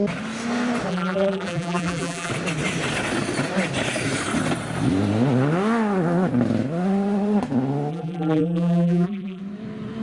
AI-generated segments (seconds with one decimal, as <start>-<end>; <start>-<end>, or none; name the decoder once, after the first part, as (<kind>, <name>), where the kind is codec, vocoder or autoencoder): 0.9-2.3 (vocoder, BigVGAN v2); 7.9-9.4